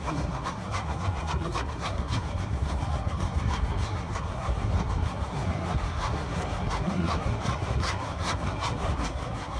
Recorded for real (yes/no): no